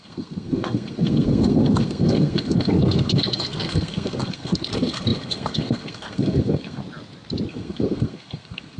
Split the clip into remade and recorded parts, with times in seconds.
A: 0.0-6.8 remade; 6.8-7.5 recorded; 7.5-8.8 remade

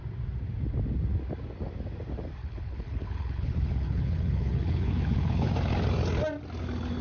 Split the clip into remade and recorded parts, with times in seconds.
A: 0.0-2.4 recorded; 2.4-5.5 remade; 5.5-7.0 recorded

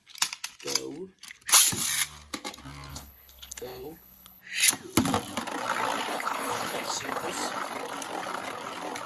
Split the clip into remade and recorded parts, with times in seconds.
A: 0.0-2.9 recorded; 2.9-4.4 remade; 4.4-6.1 recorded; 6.1-7.3 remade; 7.3-9.1 recorded